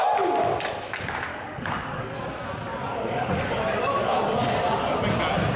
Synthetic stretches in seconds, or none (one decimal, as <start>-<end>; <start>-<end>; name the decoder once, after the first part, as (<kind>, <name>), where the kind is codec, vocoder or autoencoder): 1.3-2.2 (codec, DAC); 2.9-3.9